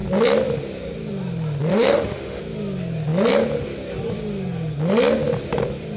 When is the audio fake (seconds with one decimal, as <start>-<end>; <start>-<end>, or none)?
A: 1.7-2.4